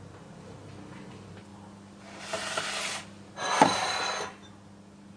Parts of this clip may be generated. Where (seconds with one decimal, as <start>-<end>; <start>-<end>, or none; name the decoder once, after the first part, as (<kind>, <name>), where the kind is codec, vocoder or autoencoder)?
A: none